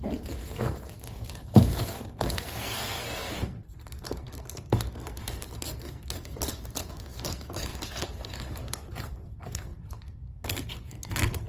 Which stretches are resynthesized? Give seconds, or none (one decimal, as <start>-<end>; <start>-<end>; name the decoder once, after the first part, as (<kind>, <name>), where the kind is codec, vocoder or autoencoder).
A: 0.0-11.5 (codec, SNAC)